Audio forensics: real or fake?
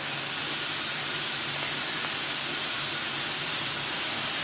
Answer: real